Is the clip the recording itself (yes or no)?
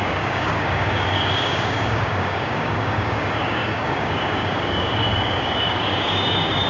no